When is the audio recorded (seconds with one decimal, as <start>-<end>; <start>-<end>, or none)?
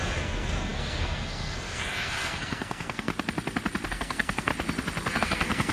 3.1-3.9; 4.5-5.2